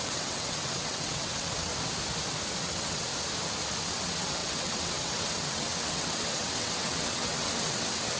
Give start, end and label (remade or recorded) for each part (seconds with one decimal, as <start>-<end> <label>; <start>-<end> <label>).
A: 0.0-1.7 remade; 1.7-2.6 recorded; 2.6-3.1 remade; 3.1-3.8 recorded; 3.8-8.2 remade